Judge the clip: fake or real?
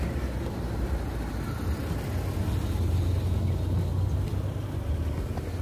real